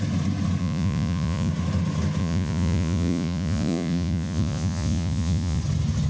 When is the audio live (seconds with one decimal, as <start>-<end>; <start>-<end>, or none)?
0.0-0.6; 1.5-2.2; 5.6-6.1